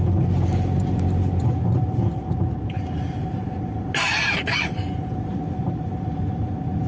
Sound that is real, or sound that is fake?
real